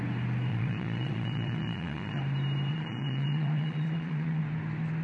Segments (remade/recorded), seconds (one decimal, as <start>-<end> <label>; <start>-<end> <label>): 0.0-0.5 recorded; 0.5-2.2 remade; 2.2-2.7 recorded; 2.7-4.4 remade; 4.4-5.0 recorded